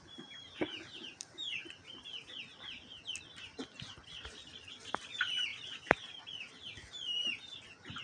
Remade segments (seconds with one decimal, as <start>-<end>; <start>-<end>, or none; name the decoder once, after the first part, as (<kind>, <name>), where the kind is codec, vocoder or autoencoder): none